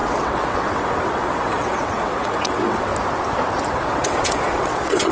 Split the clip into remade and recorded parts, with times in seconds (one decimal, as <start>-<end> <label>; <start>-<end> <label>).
0.0-2.9 remade; 2.9-3.7 recorded; 3.7-5.1 remade